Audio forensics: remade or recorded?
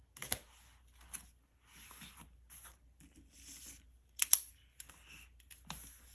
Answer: recorded